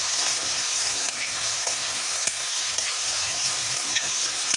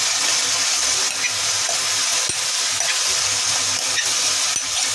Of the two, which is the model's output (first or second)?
first